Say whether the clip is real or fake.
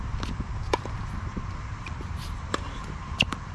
fake